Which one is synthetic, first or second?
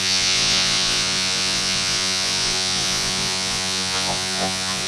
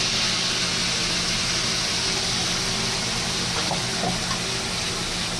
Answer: first